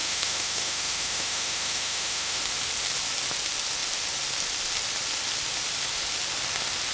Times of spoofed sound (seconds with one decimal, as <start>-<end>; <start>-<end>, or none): 0.0-2.4